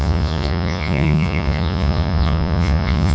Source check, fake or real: fake